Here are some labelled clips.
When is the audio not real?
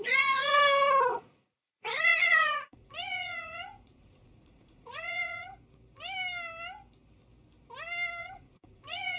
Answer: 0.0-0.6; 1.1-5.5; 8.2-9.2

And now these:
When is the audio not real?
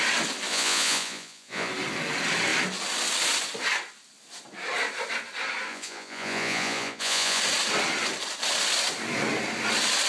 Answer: 0.5-1.7; 5.7-7.4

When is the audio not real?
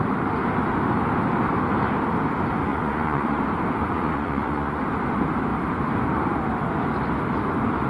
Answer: 2.7-3.4; 3.8-4.8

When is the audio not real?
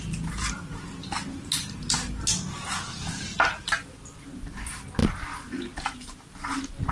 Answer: none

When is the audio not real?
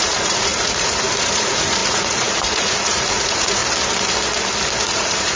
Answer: 0.0-3.6; 4.8-5.4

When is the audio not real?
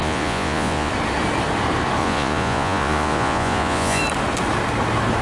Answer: 0.0-0.9; 2.0-4.0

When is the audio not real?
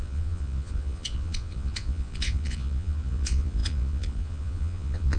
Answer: 0.0-5.2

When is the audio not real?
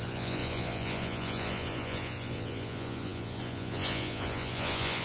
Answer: 0.0-5.0